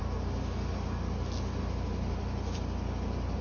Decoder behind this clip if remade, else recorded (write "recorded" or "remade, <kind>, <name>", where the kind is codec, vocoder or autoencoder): recorded